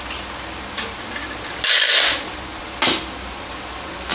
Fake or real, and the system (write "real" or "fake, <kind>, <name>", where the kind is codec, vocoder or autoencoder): real